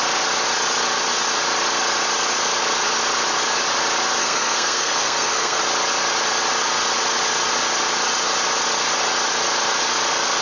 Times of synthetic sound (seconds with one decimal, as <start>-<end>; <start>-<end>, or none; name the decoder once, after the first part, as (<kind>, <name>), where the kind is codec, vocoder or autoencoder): 4.2-5.6 (codec, SNAC)